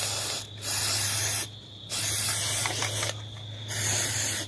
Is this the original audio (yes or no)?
yes